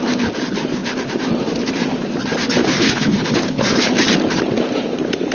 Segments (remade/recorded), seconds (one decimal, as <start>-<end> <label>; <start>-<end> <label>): 0.0-2.6 recorded; 2.6-4.0 remade; 4.0-5.3 recorded